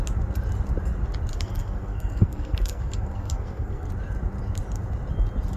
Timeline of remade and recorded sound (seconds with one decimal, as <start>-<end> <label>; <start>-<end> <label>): 0.0-1.3 recorded; 1.3-3.9 remade; 3.9-5.6 recorded